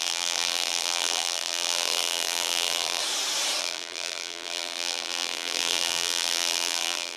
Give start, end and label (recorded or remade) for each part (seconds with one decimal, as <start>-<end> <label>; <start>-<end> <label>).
0.0-3.0 remade; 3.0-3.6 recorded; 3.6-7.2 remade